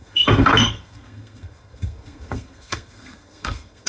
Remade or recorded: remade